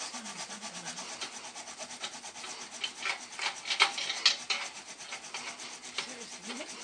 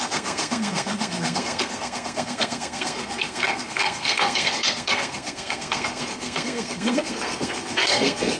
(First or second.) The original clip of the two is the first